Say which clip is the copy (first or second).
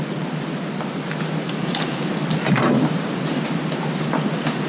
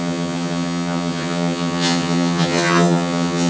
second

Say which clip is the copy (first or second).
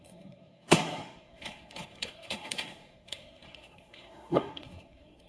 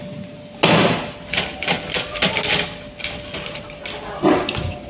first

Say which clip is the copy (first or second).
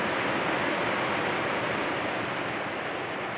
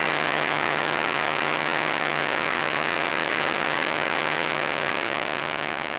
second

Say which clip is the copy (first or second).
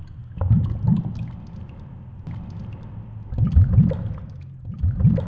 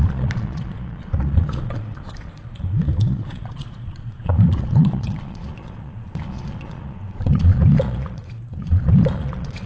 second